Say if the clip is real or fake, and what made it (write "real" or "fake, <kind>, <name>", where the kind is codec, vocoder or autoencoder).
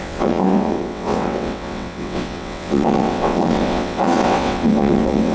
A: fake, vocoder, WaveNeXt